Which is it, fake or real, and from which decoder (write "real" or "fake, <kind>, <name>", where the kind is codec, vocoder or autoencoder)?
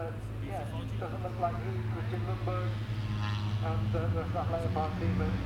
real